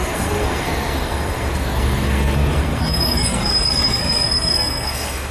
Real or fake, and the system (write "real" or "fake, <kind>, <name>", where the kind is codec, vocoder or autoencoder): fake, codec, SNAC